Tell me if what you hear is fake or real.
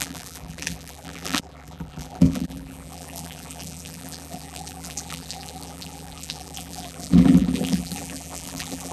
fake